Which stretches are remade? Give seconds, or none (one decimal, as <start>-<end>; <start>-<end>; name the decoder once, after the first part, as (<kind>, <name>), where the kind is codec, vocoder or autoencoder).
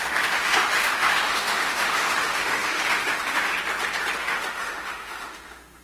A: 0.0-3.5 (autoencoder, DAC-VAE); 4.2-5.8